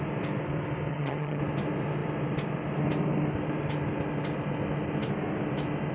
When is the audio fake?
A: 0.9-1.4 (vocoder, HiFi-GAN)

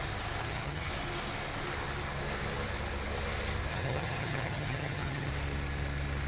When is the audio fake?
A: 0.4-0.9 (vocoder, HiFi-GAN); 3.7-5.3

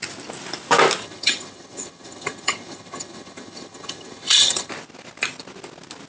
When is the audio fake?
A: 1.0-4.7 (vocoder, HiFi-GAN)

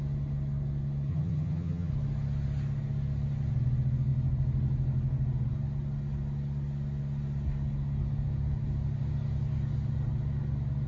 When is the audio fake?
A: 1.1-1.9 (vocoder, HiFi-GAN)

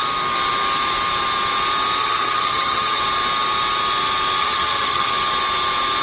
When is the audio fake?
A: 2.0-3.0 (vocoder, HiFi-GAN); 4.4-5.1

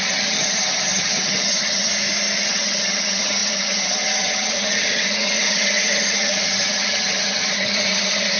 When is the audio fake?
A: 0.0-1.9 (vocoder, HiFi-GAN); 2.5-8.4

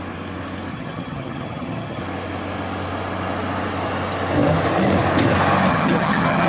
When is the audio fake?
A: 0.7-2.0 (vocoder, HiFi-GAN); 5.7-6.5